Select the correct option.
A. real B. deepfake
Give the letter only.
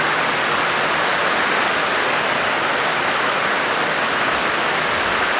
A